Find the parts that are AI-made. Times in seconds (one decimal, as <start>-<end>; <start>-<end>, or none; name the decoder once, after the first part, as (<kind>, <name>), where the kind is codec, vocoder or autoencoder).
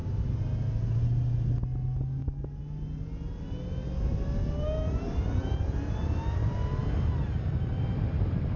none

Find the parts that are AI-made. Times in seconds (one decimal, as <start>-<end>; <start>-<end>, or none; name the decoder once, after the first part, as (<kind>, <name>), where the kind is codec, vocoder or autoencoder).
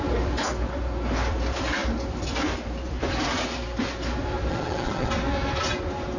4.5-5.1 (vocoder, HiFi-GAN)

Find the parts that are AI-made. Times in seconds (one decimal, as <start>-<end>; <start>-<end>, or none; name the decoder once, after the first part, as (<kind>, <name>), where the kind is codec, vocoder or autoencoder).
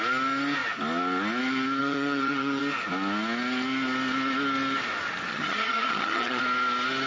1.8-2.6 (vocoder, HiFi-GAN); 5.3-6.4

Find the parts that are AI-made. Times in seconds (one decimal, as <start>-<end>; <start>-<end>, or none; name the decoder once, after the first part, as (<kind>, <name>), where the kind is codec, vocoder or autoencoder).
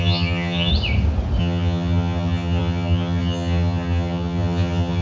0.0-0.7 (vocoder, HiFi-GAN); 1.4-5.0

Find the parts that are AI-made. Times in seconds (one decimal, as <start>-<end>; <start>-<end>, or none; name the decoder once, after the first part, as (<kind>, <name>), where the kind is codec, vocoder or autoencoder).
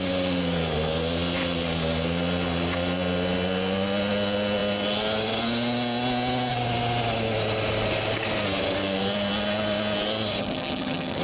10.4-11.2 (vocoder, HiFi-GAN)